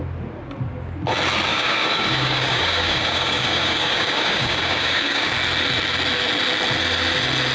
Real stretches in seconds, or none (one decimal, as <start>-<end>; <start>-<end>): 0.0-1.5; 5.3-7.5